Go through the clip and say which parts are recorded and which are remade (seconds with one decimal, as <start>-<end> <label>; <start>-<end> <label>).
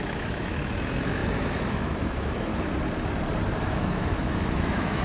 0.0-2.5 remade; 2.5-3.6 recorded; 3.6-5.0 remade